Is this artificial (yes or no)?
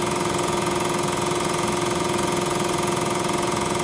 yes